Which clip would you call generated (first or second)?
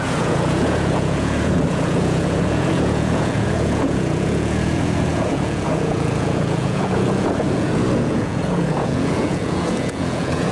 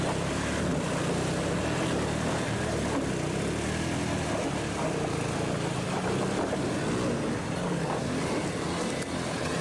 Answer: first